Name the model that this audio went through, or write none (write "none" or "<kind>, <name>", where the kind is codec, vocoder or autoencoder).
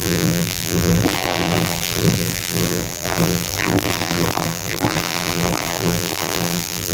vocoder, BigVGAN v2